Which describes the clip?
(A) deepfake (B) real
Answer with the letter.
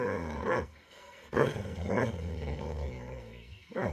A